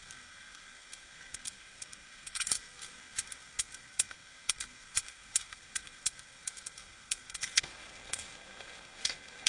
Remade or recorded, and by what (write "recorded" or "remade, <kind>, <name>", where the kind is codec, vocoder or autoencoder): remade, codec, SNAC